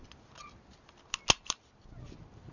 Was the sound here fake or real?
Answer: real